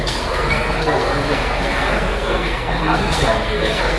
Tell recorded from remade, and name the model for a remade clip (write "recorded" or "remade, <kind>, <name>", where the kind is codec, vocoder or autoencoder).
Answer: remade, codec, SNAC